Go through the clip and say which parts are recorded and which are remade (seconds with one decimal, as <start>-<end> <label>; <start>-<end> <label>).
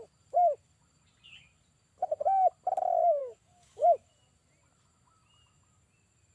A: 0.0-3.2 recorded; 3.2-4.1 remade; 4.1-6.3 recorded